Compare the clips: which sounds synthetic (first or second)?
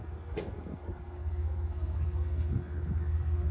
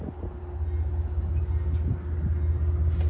first